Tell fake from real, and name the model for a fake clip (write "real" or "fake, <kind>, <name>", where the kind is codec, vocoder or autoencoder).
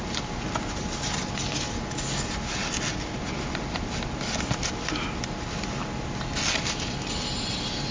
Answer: real